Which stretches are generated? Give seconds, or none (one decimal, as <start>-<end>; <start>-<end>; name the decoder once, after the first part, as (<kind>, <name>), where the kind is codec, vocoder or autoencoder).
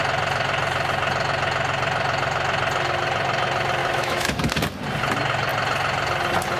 3.8-4.5 (autoencoder, DAC-VAE)